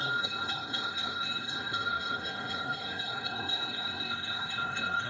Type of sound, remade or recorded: remade